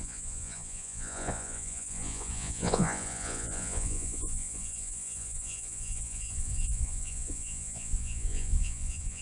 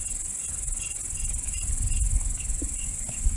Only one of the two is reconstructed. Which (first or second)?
first